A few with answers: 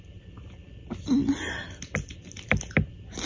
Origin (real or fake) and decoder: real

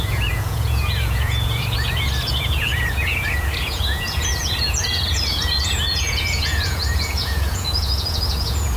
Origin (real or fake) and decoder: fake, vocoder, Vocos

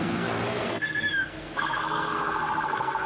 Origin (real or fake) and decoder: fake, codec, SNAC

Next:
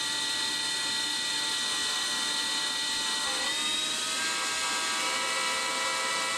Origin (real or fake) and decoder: real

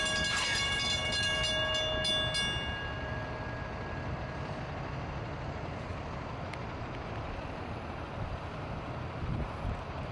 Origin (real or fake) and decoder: real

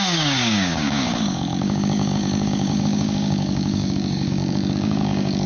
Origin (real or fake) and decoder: fake, codec, DAC